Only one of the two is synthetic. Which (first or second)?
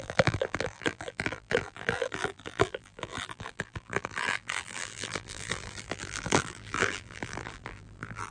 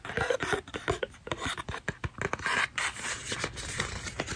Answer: first